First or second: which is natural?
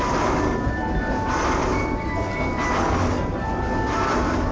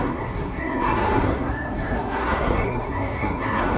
first